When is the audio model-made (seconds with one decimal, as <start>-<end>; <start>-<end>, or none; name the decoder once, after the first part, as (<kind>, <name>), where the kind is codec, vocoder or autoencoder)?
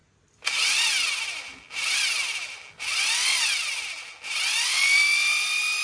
none